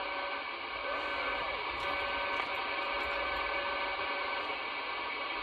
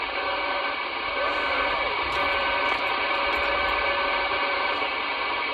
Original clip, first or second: first